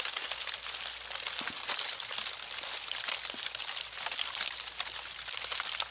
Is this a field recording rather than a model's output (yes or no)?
yes